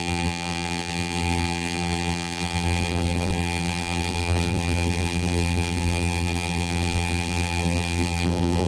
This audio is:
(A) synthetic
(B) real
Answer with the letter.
A